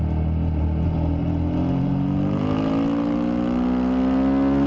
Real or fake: real